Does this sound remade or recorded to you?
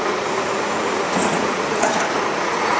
remade